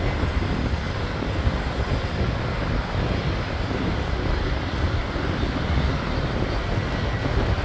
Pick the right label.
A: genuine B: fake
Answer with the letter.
A